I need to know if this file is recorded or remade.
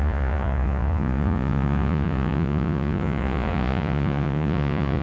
remade